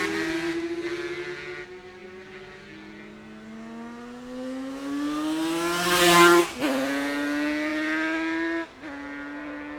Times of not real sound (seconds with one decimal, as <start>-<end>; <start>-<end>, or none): none